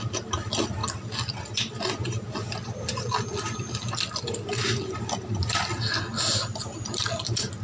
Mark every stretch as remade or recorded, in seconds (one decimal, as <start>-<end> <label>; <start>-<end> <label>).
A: 0.0-7.6 recorded